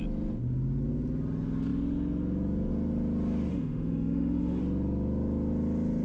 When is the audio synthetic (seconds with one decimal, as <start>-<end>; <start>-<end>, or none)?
3.5-4.6